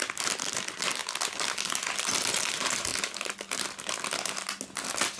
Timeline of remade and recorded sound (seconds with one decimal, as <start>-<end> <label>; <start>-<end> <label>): 0.0-5.2 recorded